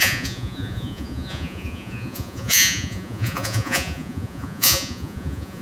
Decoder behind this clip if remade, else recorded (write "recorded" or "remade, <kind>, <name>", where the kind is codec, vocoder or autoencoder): remade, vocoder, Vocos